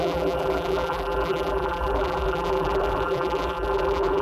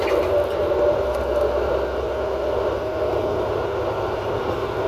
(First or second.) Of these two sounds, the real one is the second